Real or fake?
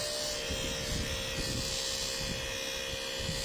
real